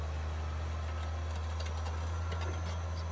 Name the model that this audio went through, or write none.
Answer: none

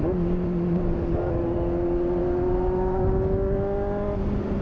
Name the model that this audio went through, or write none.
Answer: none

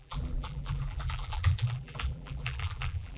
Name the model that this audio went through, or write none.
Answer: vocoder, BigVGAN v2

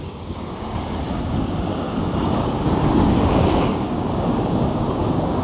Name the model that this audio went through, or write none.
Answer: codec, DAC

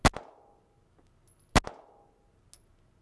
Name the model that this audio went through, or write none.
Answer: none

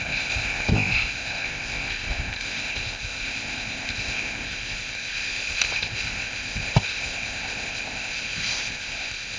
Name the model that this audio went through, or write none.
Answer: codec, ZipCodec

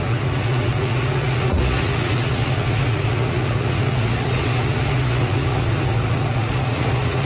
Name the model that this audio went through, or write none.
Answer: vocoder, Vocos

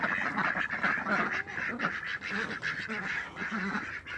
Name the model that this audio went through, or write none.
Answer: none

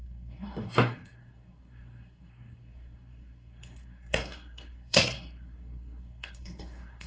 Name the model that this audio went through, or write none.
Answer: codec, SNAC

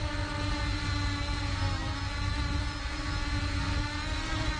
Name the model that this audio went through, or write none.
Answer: none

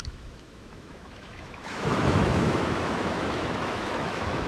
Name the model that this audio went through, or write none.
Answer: autoencoder, DAC-VAE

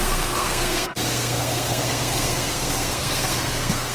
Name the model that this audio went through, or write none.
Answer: codec, SNAC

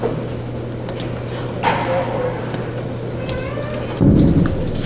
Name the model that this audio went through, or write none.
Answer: none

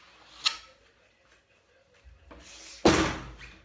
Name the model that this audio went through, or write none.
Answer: none